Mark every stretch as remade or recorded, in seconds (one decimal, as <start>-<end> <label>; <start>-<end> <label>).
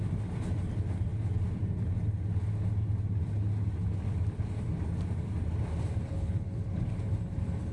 0.0-6.1 recorded; 6.1-6.8 remade; 6.8-7.7 recorded